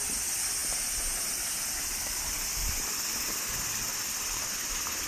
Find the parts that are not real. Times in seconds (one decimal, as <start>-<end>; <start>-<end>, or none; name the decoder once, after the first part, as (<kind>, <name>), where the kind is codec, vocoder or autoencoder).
2.6-3.8 (vocoder, BigVGAN v2)